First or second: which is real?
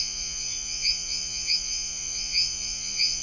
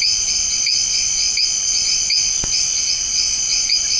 second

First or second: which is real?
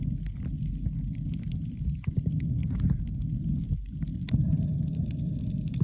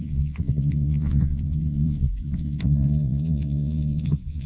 first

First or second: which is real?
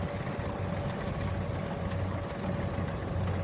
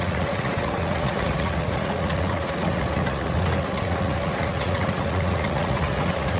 first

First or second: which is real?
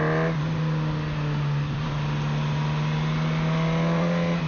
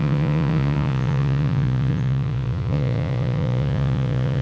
first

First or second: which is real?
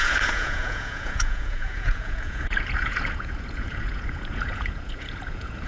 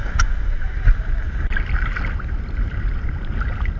second